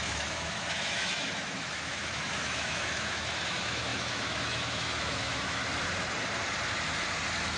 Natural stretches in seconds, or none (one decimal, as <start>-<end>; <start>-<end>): 5.6-7.6